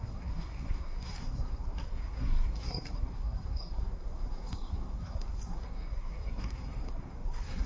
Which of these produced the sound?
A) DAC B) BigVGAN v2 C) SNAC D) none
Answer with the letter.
C